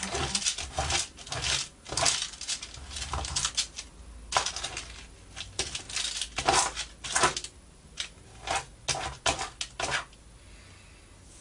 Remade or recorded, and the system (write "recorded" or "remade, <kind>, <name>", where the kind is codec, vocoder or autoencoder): recorded